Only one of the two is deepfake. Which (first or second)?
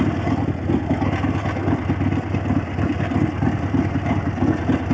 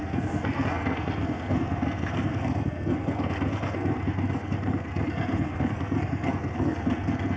second